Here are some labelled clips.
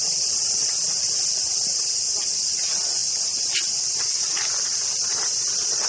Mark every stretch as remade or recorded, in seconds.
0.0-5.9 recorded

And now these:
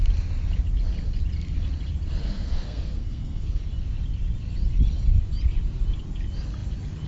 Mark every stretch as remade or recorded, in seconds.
0.0-2.2 recorded; 2.2-3.6 remade; 3.6-7.1 recorded

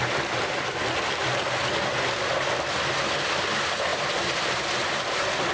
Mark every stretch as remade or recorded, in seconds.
0.0-5.5 recorded

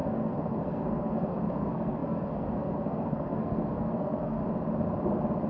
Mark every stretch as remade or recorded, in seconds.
0.0-4.4 remade; 4.4-5.5 recorded

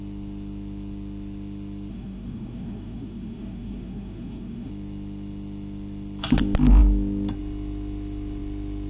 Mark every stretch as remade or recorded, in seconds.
0.0-1.9 recorded; 1.9-4.7 remade; 4.7-8.9 recorded

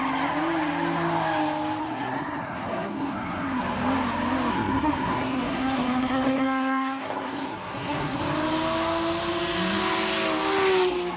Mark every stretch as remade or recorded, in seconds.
0.0-1.8 recorded; 1.8-3.6 remade; 3.6-4.5 recorded; 4.5-8.2 remade; 8.2-11.2 recorded

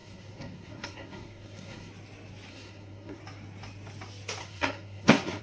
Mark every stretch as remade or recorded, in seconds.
0.0-1.9 remade; 1.9-2.5 recorded; 2.5-3.2 remade; 3.2-4.4 recorded; 4.4-5.4 remade